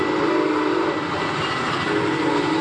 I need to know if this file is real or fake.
real